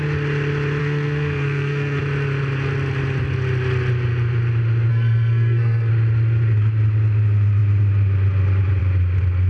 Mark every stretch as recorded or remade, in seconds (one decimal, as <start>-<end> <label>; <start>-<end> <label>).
0.0-0.8 recorded; 0.8-2.0 remade; 2.0-4.9 recorded; 4.9-5.9 remade; 5.9-9.5 recorded